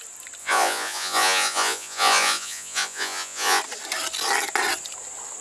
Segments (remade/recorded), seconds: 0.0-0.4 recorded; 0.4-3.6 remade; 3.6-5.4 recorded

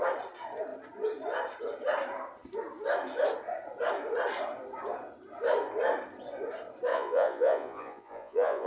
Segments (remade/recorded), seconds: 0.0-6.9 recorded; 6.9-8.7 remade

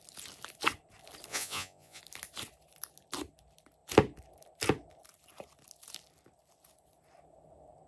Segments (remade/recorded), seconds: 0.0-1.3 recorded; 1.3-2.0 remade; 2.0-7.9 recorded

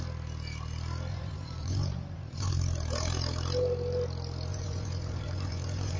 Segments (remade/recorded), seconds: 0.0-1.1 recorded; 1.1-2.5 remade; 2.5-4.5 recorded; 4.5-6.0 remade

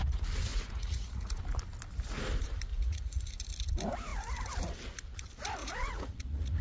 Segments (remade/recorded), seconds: 0.0-0.5 recorded; 0.5-1.4 remade; 1.4-2.7 recorded; 2.7-3.3 remade; 3.3-5.6 recorded; 5.6-6.6 remade